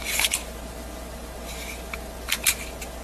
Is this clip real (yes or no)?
yes